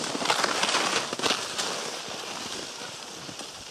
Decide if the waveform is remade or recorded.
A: recorded